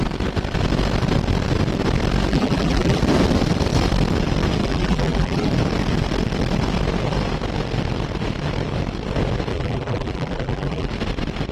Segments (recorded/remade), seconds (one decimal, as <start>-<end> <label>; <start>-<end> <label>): 0.0-2.3 recorded; 2.3-3.0 remade; 3.0-4.6 recorded; 4.6-5.5 remade; 5.5-9.5 recorded; 9.5-10.9 remade; 10.9-11.5 recorded